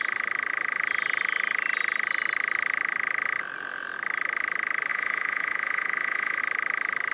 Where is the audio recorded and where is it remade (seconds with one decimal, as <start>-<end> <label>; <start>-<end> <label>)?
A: 0.0-4.9 recorded; 4.9-6.4 remade; 6.4-7.1 recorded